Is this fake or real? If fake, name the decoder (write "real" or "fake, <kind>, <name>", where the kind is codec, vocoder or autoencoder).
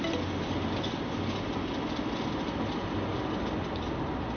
real